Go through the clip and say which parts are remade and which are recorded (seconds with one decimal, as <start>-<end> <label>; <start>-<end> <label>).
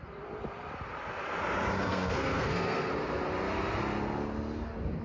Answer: 0.0-1.9 recorded; 1.9-2.9 remade; 2.9-5.0 recorded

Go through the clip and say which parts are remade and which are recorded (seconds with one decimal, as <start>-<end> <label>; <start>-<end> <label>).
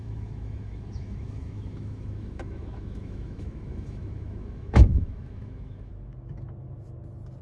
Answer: 0.0-5.9 remade; 5.9-7.4 recorded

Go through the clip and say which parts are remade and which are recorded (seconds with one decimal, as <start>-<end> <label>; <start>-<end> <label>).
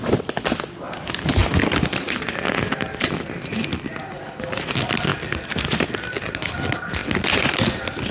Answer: 0.0-1.4 recorded; 1.4-2.2 remade; 2.2-5.1 recorded; 5.1-5.7 remade; 5.7-8.1 recorded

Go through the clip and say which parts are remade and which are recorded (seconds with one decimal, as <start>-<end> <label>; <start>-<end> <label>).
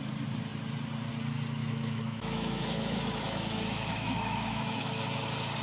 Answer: 0.0-1.6 recorded; 1.6-5.0 remade; 5.0-5.6 recorded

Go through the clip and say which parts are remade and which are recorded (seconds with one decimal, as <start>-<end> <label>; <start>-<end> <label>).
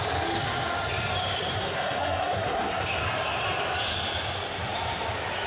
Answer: 0.0-1.6 recorded; 1.6-3.0 remade; 3.0-5.5 recorded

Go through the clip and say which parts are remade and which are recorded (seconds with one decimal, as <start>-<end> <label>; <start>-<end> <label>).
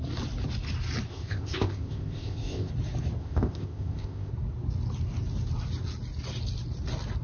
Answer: 0.0-1.1 recorded; 1.1-2.7 remade; 2.7-3.2 recorded; 3.2-4.3 remade; 4.3-7.2 recorded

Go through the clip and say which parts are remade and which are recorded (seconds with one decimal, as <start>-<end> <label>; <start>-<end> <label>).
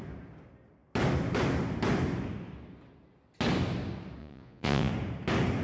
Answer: 0.0-4.2 recorded; 4.2-4.9 remade; 4.9-5.6 recorded